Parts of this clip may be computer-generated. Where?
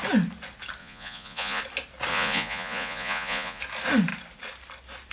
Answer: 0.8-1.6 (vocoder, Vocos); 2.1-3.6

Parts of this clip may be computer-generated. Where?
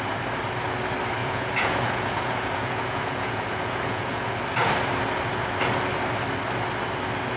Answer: 1.2-4.3 (vocoder, Vocos)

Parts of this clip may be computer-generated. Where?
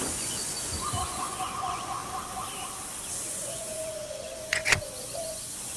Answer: 0.0-2.0 (vocoder, Vocos); 3.3-5.8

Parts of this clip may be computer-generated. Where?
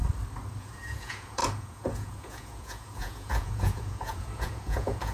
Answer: 0.6-5.1 (vocoder, Vocos)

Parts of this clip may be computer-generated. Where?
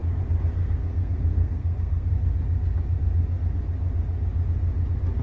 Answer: 0.5-2.1 (codec, SNAC)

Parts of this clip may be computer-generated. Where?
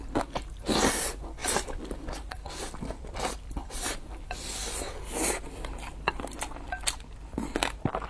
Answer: 1.4-4.1 (vocoder, BigVGAN v2)